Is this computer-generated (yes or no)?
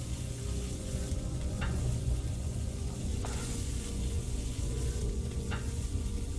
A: yes